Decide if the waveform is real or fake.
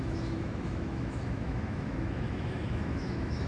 fake